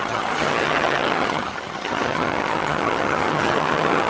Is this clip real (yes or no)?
no